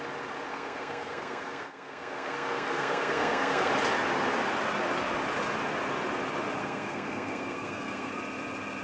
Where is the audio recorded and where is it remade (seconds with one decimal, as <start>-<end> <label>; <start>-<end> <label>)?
0.0-0.5 recorded; 0.5-3.7 remade; 3.7-6.6 recorded; 6.6-8.2 remade; 8.2-8.8 recorded